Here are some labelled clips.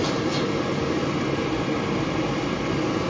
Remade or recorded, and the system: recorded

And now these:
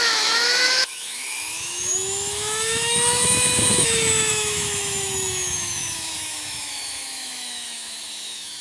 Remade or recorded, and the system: remade, autoencoder, DAC-VAE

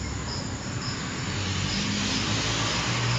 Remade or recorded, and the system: recorded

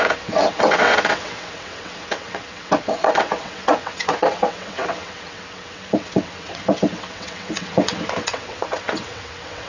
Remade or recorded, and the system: remade, vocoder, WaveNeXt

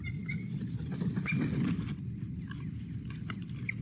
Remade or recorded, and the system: recorded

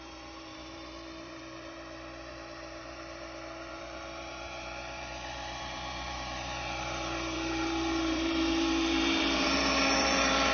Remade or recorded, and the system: remade, vocoder, BigVGAN v2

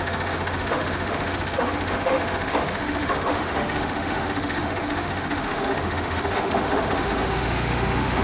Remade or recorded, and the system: remade, autoencoder, DAC-VAE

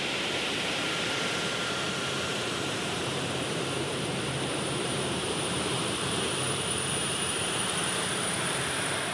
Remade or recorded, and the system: remade, vocoder, BigVGAN v2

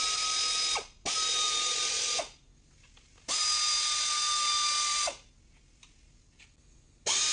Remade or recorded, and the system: recorded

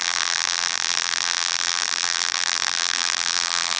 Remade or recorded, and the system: remade, vocoder, BigVGAN v2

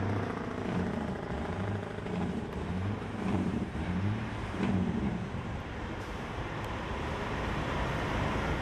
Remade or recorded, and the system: remade, vocoder, BigVGAN v2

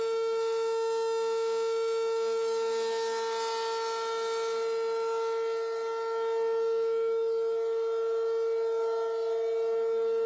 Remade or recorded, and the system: recorded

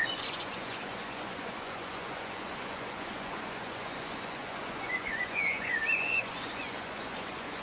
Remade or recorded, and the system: remade, vocoder, Vocos